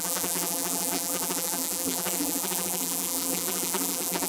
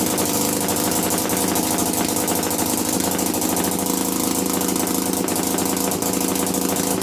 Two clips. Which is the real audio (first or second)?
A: second